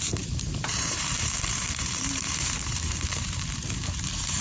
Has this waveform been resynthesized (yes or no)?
yes